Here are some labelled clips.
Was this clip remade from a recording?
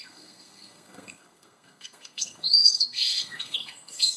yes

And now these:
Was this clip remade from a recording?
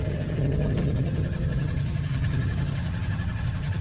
yes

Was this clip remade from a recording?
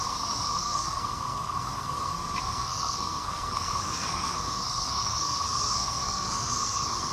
yes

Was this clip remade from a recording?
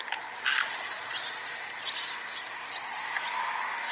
no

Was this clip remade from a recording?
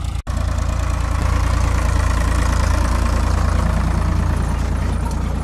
no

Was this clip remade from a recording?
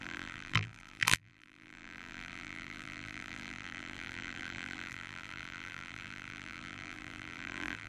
yes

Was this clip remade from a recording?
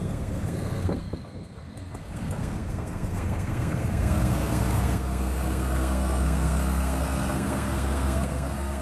yes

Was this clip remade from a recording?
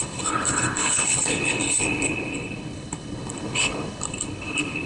yes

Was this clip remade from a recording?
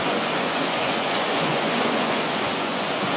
yes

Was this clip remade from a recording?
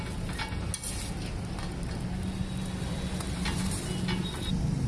no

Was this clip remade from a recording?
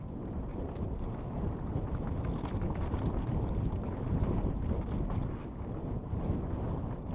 no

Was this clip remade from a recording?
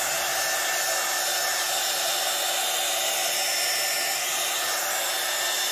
no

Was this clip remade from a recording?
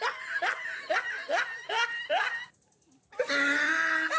no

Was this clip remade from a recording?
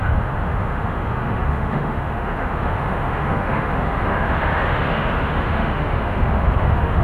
yes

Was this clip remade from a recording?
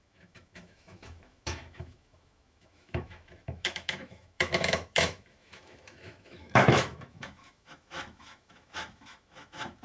yes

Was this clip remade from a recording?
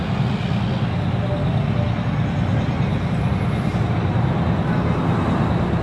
no